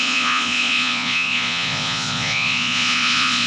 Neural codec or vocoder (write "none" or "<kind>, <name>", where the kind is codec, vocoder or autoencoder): vocoder, Vocos